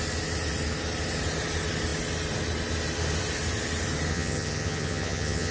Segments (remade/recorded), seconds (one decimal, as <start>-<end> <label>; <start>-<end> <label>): 0.0-4.1 recorded; 4.1-5.5 remade